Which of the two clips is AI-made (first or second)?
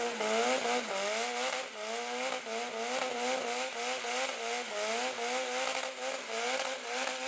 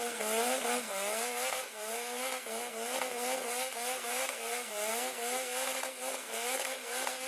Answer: second